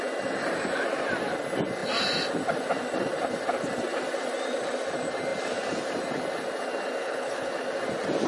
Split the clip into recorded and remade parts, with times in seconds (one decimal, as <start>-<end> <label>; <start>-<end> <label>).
0.0-7.0 recorded; 7.0-7.5 remade; 7.5-8.3 recorded